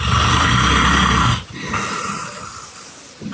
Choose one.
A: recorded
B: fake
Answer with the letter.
A